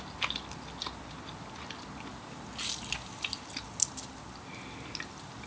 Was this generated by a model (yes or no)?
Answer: no